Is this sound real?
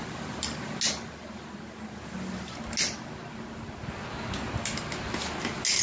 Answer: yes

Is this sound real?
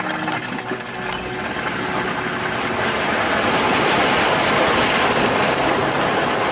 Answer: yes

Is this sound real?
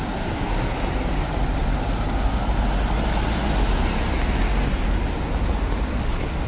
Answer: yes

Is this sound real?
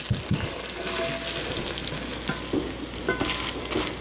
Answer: yes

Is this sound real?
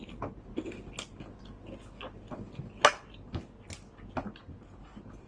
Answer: yes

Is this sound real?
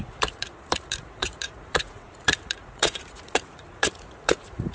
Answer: no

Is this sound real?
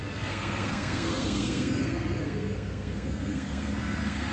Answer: no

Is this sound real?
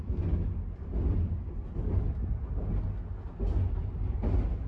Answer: yes